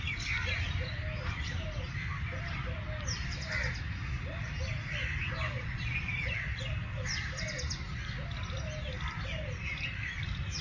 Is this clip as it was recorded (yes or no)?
yes